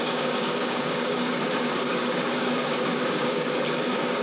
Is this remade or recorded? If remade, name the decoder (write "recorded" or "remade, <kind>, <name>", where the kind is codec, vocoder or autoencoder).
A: remade, codec, DAC